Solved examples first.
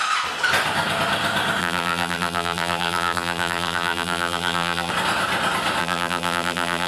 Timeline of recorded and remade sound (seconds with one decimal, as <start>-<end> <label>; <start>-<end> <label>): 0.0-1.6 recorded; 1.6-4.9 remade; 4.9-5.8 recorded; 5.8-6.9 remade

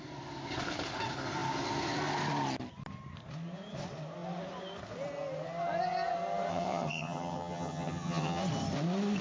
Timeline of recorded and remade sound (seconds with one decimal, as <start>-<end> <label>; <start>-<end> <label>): 0.0-6.5 recorded; 6.5-8.4 remade; 8.4-9.2 recorded

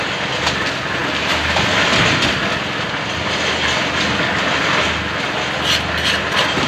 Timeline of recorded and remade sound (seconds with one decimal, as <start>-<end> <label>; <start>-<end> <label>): 0.0-6.7 recorded